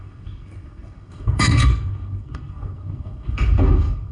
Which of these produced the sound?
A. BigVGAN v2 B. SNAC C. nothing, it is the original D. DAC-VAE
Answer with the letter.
B